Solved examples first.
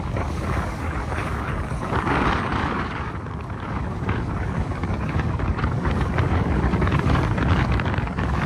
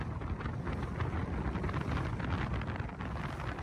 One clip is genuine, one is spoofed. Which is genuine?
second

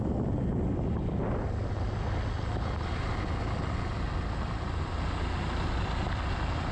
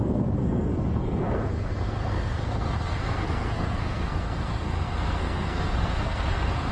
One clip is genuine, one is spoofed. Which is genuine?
first